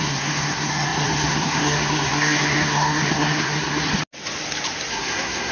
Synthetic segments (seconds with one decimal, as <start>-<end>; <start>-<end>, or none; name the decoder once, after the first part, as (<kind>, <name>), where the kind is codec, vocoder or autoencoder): 0.0-3.9 (codec, SNAC); 4.9-5.5